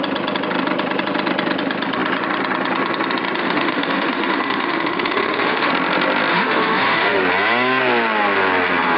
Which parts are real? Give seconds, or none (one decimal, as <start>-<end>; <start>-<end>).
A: 0.0-3.4; 5.7-6.3; 7.2-9.0